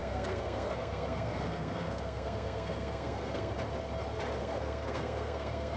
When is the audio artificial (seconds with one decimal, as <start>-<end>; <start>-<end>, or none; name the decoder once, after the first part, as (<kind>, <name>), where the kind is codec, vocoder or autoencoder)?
0.0-3.5 (codec, SNAC); 4.4-5.8